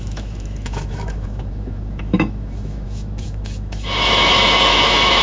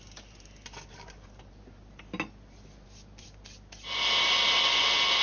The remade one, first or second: first